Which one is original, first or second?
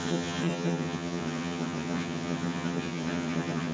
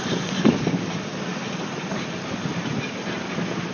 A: second